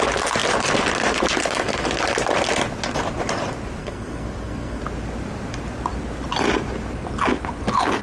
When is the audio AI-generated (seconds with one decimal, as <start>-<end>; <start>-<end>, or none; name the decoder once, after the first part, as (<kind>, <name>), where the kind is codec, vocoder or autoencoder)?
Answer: 3.8-4.8 (codec, SNAC)